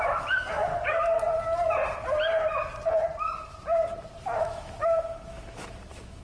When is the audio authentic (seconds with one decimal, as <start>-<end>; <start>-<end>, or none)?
0.7-4.4